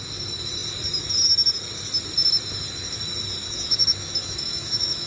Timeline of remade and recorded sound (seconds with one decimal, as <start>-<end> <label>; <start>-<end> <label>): 0.0-3.4 recorded; 3.4-5.1 remade

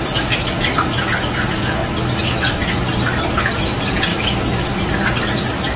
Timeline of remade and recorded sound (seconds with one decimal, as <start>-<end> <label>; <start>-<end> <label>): 0.0-4.1 recorded; 4.1-4.7 remade; 4.7-5.8 recorded

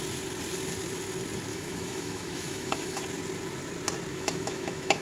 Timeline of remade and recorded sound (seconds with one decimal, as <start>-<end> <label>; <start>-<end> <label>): 0.0-1.5 recorded; 1.5-3.0 remade; 3.0-4.1 recorded; 4.1-5.0 remade

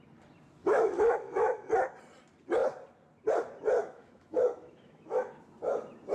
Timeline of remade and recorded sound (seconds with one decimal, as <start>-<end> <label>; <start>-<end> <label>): 0.0-0.6 recorded; 0.6-1.7 remade; 1.7-3.8 recorded; 3.8-5.3 remade; 5.3-6.1 recorded

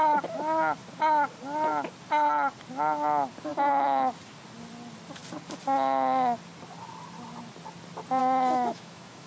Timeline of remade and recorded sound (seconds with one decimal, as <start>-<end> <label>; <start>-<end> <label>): 0.0-8.2 recorded; 8.2-9.3 remade

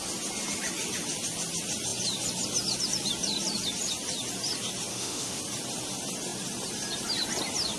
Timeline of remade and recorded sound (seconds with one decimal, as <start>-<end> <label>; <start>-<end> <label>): 0.0-4.9 recorded; 4.9-5.4 remade; 5.4-7.8 recorded

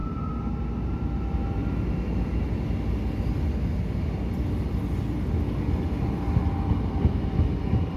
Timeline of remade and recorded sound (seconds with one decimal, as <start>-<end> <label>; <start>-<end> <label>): 0.0-8.0 recorded

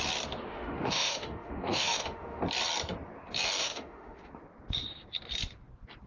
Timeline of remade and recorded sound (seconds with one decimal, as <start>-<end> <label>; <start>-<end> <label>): 0.0-0.5 recorded; 0.5-2.4 remade; 2.4-3.6 recorded; 3.6-4.3 remade; 4.3-6.1 recorded